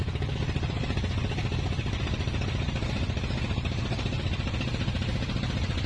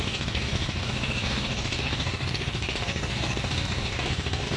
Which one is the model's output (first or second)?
second